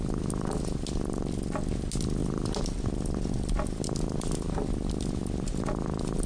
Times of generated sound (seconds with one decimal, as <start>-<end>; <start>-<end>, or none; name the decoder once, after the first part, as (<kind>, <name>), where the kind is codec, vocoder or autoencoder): none